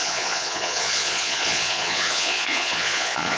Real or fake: fake